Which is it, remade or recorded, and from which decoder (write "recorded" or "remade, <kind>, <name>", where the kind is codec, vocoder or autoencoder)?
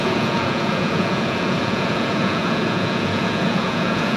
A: remade, vocoder, Vocos